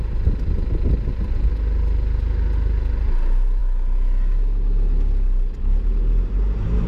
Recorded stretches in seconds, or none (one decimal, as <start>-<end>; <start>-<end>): 0.0-6.9

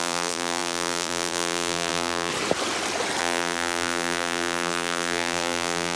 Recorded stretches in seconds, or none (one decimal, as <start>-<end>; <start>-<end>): 2.3-3.2

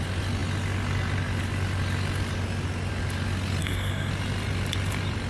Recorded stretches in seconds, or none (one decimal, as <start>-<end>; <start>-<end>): 0.0-3.6; 4.1-5.3

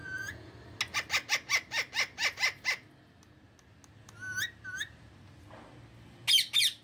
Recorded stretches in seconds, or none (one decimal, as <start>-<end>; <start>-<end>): 0.5-6.8

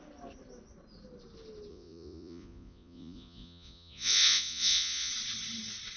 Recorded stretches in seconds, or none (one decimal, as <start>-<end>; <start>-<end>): 0.0-1.7; 5.1-6.0

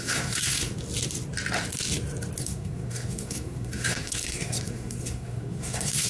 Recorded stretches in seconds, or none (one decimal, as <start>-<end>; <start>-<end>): 0.7-2.4

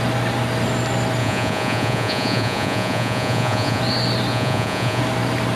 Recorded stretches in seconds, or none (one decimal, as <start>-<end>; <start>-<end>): 0.0-1.2; 3.8-4.3; 5.0-5.6

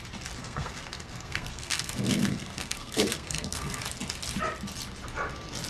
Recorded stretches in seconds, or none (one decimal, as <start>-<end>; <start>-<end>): 0.0-0.4; 3.8-5.7